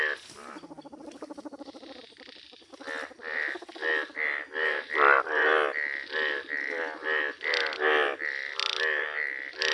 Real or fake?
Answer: real